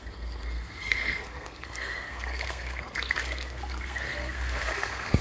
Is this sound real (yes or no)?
no